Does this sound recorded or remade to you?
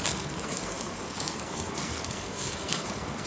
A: remade